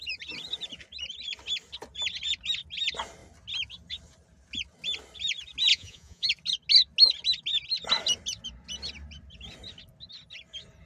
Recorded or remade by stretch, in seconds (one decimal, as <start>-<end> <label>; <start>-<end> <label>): 0.0-5.7 recorded; 5.7-6.3 remade; 6.3-10.9 recorded